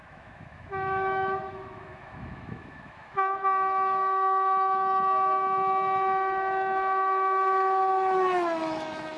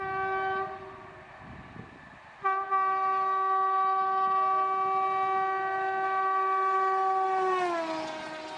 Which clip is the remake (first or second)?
first